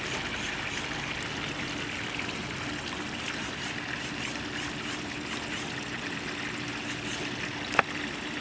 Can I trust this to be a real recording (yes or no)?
yes